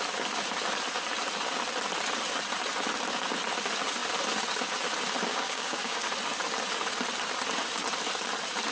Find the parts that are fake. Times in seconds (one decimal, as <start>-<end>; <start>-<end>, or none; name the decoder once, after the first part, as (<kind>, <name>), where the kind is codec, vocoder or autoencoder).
5.3-6.0 (codec, DAC)